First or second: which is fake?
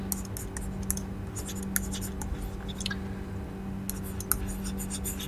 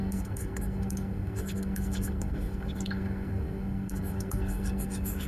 second